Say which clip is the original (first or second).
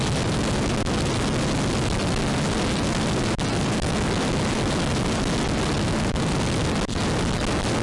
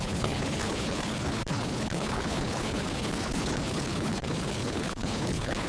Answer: first